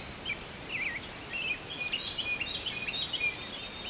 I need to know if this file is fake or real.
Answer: real